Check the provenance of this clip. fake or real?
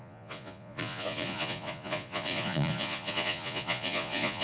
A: fake